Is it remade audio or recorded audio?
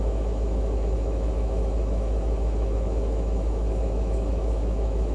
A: remade